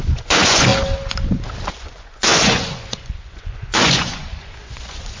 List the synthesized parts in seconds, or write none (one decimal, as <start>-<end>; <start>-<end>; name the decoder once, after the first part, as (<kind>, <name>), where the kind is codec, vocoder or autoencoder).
0.0-0.7 (vocoder, Vocos); 1.7-5.2